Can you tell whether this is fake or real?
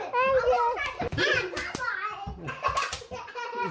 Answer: real